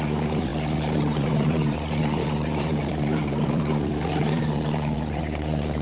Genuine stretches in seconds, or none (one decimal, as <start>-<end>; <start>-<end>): none